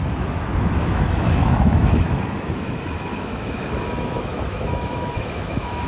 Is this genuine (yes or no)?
no